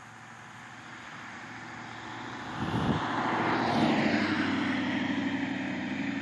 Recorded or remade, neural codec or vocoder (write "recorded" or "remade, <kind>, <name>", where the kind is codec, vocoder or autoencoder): remade, vocoder, BigVGAN v2